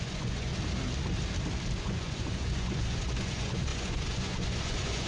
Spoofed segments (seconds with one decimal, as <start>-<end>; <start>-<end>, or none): 0.0-0.5; 1.8-5.1